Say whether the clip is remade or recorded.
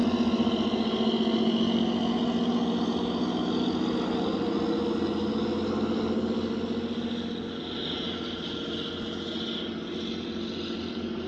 recorded